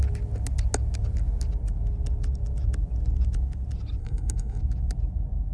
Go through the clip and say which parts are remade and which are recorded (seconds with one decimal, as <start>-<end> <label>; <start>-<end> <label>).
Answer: 0.0-4.0 recorded; 4.0-4.6 remade; 4.6-5.5 recorded

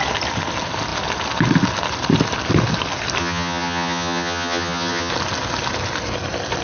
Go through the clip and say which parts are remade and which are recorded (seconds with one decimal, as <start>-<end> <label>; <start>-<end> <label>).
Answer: 0.0-3.2 recorded; 3.2-5.1 remade; 5.1-6.6 recorded